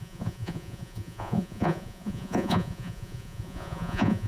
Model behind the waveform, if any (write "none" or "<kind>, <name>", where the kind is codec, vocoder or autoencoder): vocoder, Vocos